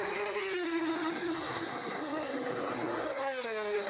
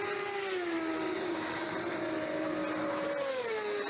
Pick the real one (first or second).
second